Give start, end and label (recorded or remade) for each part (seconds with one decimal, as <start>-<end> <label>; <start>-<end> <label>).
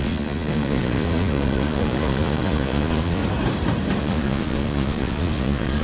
0.0-3.2 remade; 3.2-4.0 recorded; 4.0-5.8 remade